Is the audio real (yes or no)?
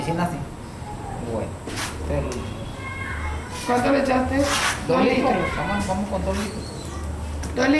yes